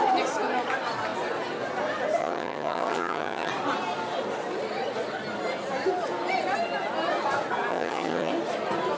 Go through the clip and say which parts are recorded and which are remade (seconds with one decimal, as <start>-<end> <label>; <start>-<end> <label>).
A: 0.0-2.2 recorded; 2.2-3.5 remade; 3.5-7.7 recorded; 7.7-8.3 remade; 8.3-9.0 recorded